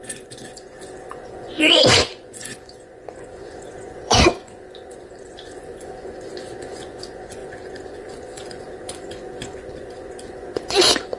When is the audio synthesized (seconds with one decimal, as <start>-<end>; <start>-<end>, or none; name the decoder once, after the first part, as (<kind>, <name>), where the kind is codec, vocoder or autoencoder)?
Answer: 0.0-11.2 (vocoder, Vocos)